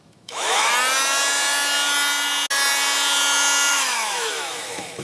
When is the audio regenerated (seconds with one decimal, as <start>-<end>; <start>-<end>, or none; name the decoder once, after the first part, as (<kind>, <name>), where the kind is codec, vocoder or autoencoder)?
0.0-0.7 (autoencoder, DAC-VAE); 3.7-5.0